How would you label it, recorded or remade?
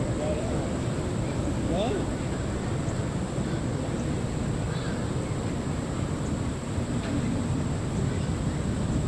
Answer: recorded